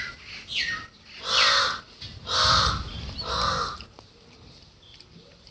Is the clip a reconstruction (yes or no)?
no